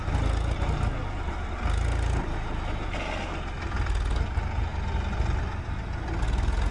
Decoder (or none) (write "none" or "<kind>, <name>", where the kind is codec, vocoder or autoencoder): none